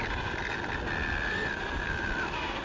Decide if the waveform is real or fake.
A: real